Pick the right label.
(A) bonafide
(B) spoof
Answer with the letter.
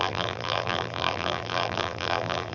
B